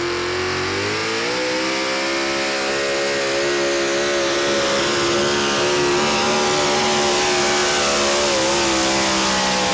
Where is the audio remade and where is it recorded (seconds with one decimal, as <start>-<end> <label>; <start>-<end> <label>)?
0.0-9.7 recorded